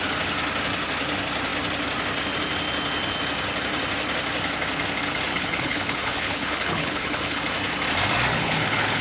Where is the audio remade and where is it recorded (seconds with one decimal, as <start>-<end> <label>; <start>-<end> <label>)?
0.0-5.3 recorded; 5.3-7.4 remade; 7.4-8.3 recorded; 8.3-9.0 remade